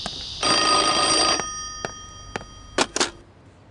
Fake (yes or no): no